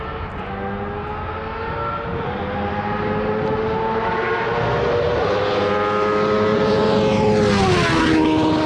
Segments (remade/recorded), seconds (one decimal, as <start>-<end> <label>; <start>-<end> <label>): 0.0-6.5 recorded; 6.5-7.0 remade; 7.0-8.7 recorded

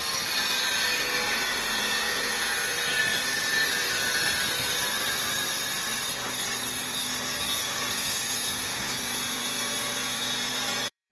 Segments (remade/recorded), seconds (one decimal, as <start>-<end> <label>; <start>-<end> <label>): 0.0-1.5 recorded; 1.5-2.7 remade; 2.7-7.5 recorded; 7.5-11.1 remade

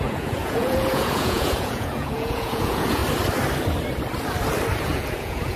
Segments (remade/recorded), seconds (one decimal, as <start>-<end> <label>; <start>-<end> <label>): 0.0-3.0 remade; 3.0-4.8 recorded; 4.8-5.6 remade

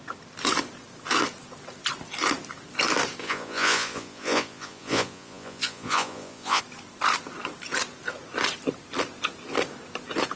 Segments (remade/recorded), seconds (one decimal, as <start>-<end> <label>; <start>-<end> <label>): 0.0-3.2 recorded; 3.2-6.6 remade; 6.6-10.4 recorded

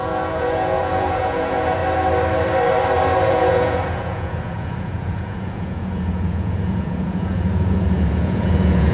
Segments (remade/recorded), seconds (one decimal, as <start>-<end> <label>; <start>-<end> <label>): 0.0-1.8 remade; 1.8-3.3 recorded; 3.3-8.9 remade

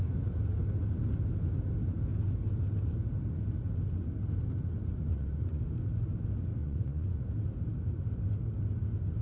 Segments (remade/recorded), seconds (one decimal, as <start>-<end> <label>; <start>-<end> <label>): 0.0-5.1 recorded; 5.1-5.6 remade; 5.6-6.6 recorded; 6.6-7.2 remade; 7.2-9.2 recorded